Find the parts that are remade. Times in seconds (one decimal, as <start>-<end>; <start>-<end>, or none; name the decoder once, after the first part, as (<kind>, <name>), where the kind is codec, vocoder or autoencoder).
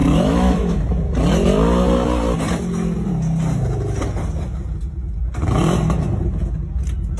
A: 0.0-0.8 (autoencoder, DAC-VAE)